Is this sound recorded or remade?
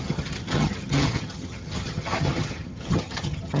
remade